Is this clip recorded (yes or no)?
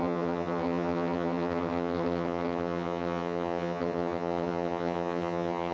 no